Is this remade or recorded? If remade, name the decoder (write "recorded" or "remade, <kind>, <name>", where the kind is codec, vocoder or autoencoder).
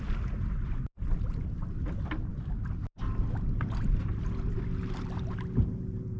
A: recorded